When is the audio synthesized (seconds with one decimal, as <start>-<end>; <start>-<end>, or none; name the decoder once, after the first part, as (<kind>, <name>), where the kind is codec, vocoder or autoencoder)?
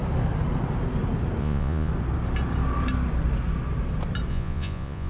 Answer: 1.4-1.9 (vocoder, Vocos); 4.3-5.1